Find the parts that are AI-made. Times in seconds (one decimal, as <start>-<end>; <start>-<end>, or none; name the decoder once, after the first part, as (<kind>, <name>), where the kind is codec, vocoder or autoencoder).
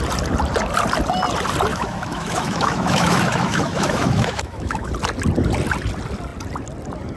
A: 1.7-4.9 (autoencoder, DAC-VAE)